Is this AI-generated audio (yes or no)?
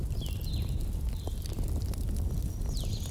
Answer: no